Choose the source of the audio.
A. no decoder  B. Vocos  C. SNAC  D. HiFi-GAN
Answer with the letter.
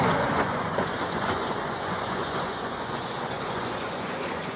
B